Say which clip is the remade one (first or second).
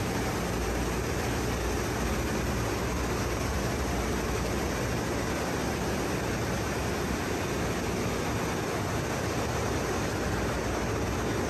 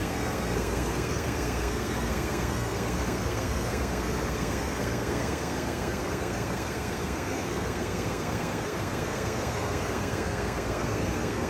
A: second